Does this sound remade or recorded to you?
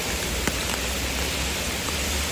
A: recorded